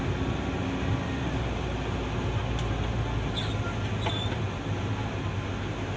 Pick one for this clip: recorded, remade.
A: recorded